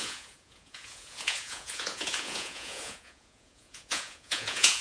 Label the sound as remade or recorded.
remade